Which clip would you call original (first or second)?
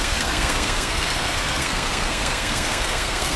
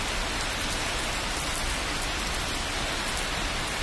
second